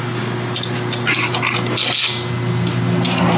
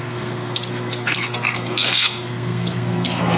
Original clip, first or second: first